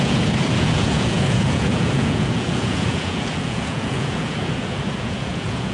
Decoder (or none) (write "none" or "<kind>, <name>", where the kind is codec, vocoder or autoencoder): vocoder, Vocos